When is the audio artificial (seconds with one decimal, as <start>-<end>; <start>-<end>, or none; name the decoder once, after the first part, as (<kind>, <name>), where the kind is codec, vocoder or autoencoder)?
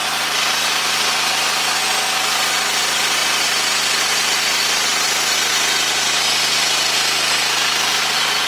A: 4.9-5.5 (vocoder, BigVGAN v2)